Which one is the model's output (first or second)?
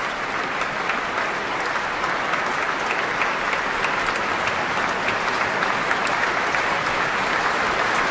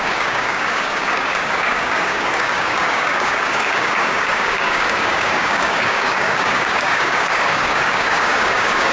second